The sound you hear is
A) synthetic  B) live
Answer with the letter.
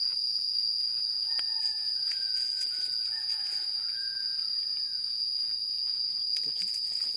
A